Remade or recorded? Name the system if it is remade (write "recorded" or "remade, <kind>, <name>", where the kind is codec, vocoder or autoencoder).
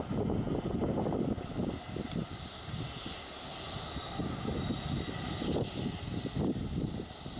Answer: recorded